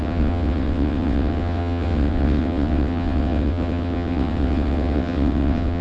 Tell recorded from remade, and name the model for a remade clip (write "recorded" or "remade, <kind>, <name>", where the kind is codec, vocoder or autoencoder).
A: remade, vocoder, WaveNeXt